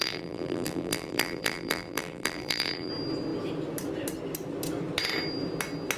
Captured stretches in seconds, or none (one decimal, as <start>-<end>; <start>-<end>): 2.9-6.0